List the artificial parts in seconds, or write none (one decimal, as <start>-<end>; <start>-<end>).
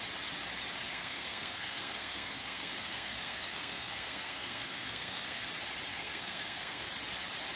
0.9-5.5; 5.9-6.9